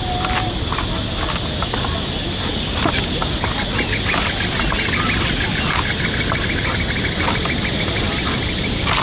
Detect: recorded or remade recorded